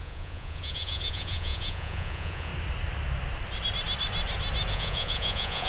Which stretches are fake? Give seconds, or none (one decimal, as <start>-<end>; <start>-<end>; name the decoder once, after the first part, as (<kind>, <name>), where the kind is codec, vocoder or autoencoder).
0.0-2.5 (vocoder, Vocos); 4.7-5.7